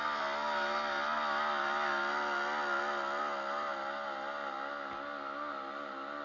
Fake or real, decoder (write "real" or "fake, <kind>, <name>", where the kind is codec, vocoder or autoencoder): real